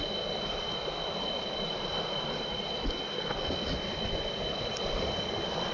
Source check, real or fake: real